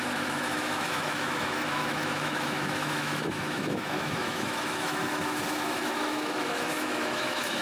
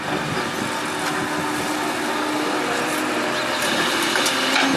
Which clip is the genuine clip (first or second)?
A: second